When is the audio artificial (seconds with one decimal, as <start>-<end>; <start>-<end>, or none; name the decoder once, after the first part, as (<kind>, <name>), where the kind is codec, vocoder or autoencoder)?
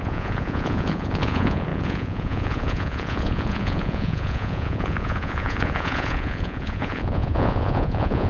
0.0-8.3 (vocoder, Vocos)